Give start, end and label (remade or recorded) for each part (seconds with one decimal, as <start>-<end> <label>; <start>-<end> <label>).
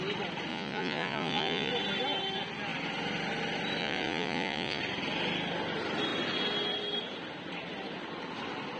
0.0-0.5 recorded; 0.5-1.7 remade; 1.7-3.8 recorded; 3.8-4.8 remade; 4.8-8.8 recorded